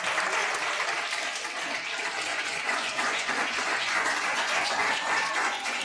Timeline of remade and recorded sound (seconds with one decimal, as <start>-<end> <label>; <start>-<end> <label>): 0.0-2.3 recorded; 2.3-5.8 remade